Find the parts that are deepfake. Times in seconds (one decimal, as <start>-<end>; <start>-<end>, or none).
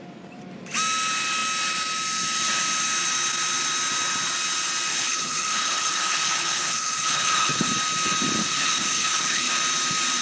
4.9-7.7; 8.4-9.5